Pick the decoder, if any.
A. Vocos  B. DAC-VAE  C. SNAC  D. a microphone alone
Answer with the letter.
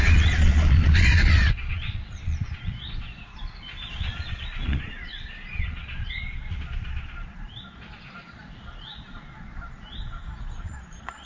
A